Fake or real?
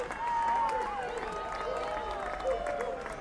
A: real